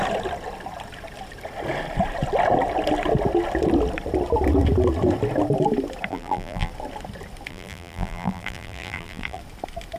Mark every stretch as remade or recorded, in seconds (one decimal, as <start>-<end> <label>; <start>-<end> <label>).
0.0-6.1 recorded; 6.1-6.7 remade; 6.7-7.5 recorded; 7.5-9.4 remade; 9.4-10.0 recorded